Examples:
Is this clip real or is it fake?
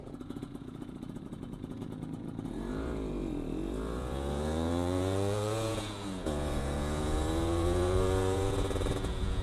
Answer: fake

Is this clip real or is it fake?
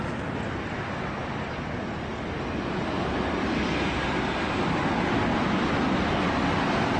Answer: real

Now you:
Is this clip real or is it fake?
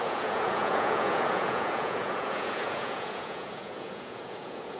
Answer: fake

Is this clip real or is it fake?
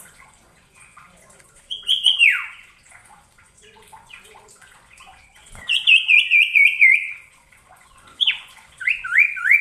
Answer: fake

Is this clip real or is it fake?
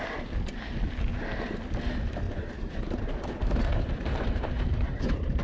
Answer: real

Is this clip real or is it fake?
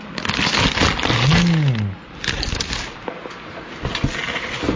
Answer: real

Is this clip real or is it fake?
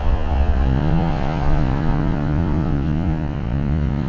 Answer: fake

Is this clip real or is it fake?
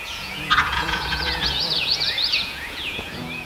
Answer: fake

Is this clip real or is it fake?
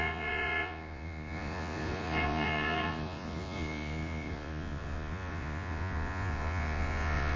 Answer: fake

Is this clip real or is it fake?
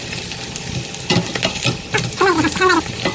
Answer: real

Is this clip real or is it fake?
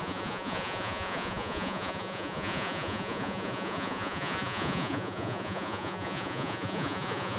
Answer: fake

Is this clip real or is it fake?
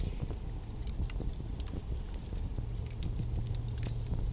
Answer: real